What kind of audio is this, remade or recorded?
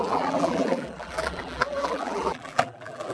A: remade